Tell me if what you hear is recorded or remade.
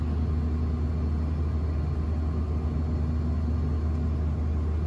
recorded